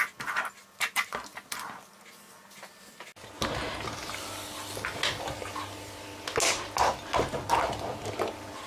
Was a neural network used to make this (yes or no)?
no